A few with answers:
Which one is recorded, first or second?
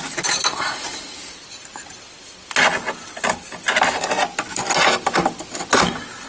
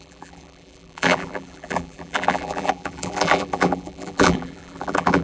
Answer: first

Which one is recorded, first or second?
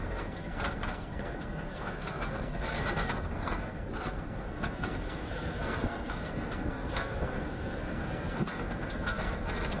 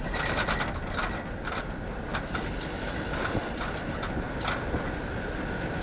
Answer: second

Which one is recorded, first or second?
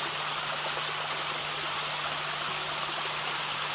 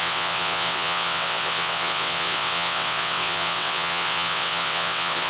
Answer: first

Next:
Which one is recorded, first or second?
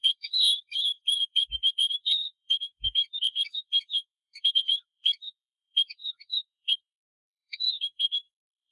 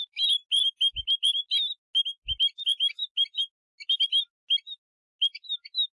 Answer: second